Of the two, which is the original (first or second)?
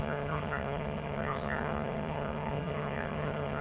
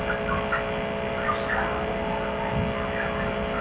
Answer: second